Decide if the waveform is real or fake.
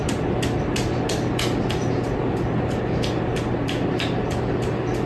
real